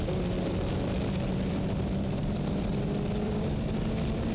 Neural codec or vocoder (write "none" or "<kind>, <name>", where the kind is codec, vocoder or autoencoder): vocoder, BigVGAN v2